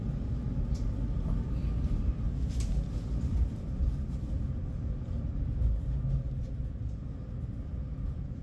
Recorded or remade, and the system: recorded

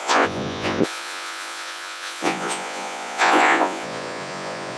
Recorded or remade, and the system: remade, vocoder, Vocos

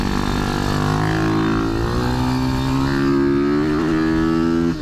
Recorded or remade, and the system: recorded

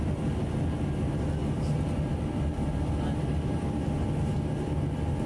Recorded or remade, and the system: recorded